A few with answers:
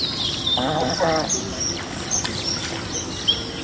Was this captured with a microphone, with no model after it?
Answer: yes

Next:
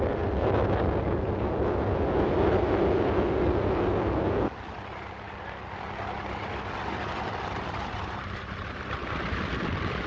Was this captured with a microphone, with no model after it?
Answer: yes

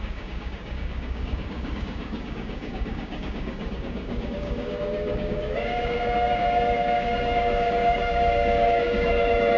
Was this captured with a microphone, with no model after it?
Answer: no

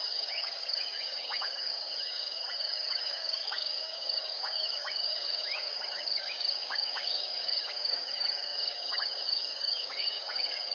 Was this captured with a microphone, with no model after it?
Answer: no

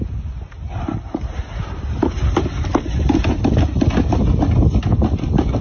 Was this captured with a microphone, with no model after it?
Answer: yes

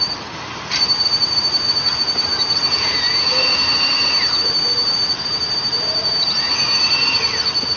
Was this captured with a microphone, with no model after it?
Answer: yes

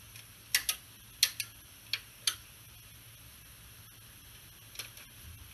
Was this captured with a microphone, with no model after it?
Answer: yes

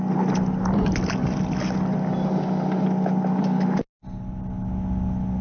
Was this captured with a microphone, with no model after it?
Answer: yes